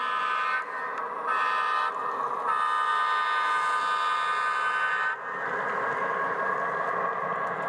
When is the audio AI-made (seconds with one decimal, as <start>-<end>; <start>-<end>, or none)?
none